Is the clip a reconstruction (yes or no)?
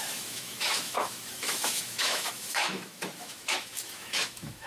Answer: yes